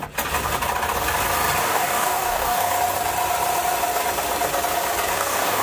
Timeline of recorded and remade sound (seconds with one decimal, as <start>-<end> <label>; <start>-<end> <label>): 0.0-1.6 recorded; 1.6-2.7 remade; 2.7-5.1 recorded; 5.1-5.6 remade